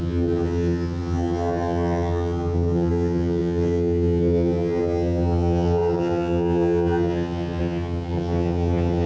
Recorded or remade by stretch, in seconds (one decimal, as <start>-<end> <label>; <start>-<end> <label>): 0.0-9.1 remade